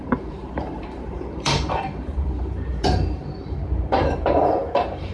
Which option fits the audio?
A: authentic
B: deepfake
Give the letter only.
B